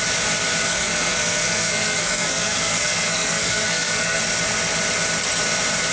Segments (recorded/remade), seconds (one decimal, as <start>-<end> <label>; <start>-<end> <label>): 0.0-0.7 recorded; 0.7-4.2 remade; 4.2-5.9 recorded